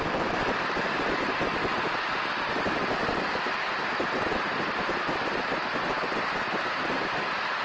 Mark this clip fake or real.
real